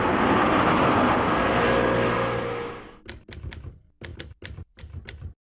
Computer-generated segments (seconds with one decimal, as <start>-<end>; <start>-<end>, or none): none